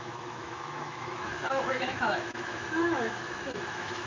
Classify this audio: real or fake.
fake